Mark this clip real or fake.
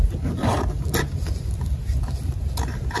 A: real